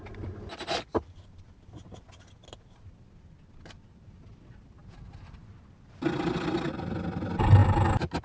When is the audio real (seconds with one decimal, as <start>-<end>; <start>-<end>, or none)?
0.0-8.2

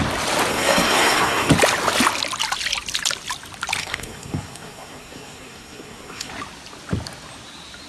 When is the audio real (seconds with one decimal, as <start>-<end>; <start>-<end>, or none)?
0.0-0.5; 1.5-3.8; 6.3-7.9

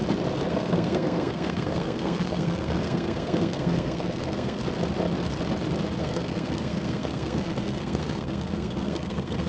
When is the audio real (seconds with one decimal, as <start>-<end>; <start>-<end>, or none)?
0.0-0.5; 4.6-6.0

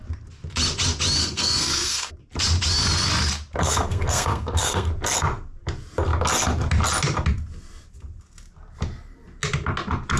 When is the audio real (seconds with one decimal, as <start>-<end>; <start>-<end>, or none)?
0.0-1.2; 2.1-3.6; 4.9-10.2

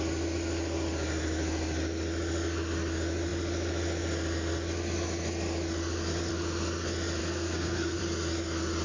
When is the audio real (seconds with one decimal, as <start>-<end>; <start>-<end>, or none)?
0.0-7.2; 8.0-8.8